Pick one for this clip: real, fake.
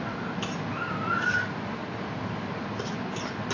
real